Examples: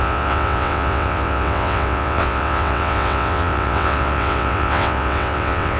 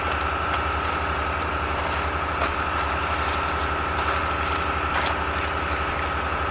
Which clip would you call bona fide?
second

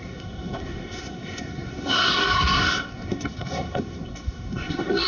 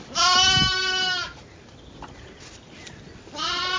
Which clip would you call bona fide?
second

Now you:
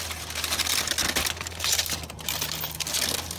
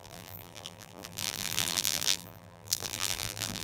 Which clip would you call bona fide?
first